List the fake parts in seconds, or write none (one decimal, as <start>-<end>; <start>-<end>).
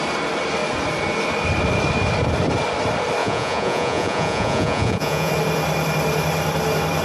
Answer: 3.2-5.3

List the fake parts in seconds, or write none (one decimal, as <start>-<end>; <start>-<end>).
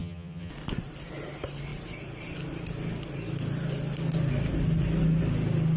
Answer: 0.0-0.5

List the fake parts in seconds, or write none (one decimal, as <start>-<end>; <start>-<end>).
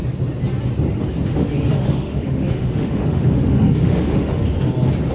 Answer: 1.3-4.4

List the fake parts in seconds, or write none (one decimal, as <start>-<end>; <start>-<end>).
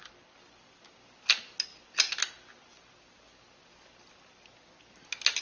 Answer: none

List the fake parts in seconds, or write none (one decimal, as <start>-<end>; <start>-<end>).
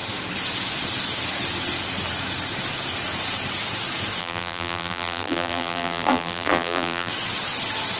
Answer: 4.2-7.1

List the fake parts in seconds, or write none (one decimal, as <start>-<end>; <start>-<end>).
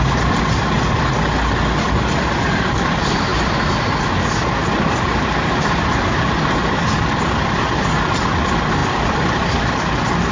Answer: 8.8-9.9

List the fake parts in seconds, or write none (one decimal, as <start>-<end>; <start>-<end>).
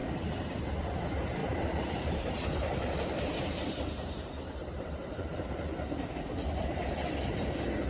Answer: 0.0-0.6; 1.4-6.1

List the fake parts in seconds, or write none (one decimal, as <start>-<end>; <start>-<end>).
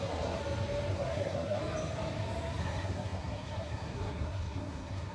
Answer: 0.0-0.4; 0.9-1.6; 2.6-5.1